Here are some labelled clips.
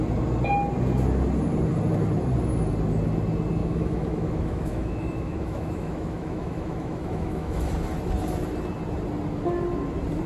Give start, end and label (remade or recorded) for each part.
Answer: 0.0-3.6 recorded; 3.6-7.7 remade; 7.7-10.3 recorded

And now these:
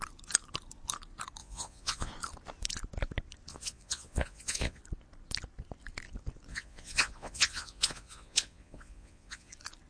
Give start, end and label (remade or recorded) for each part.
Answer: 0.0-1.4 recorded; 1.4-2.1 remade; 2.1-3.5 recorded; 3.5-4.8 remade; 4.8-6.5 recorded; 6.5-9.5 remade; 9.5-9.9 recorded

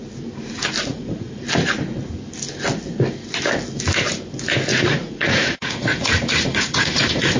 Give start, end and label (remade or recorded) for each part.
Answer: 0.0-0.9 recorded; 0.9-1.4 remade; 1.4-4.7 recorded; 4.7-7.4 remade

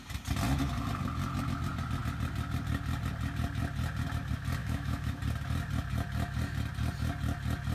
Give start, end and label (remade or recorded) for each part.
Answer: 0.0-4.6 recorded; 4.6-5.2 remade; 5.2-7.7 recorded

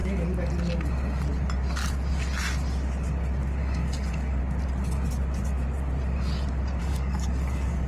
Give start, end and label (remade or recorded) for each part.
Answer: 0.0-3.6 recorded; 3.6-4.4 remade; 4.4-6.8 recorded; 6.8-7.9 remade

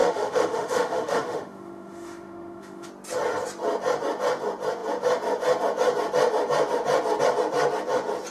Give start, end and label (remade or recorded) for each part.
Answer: 0.0-2.9 remade; 2.9-8.3 recorded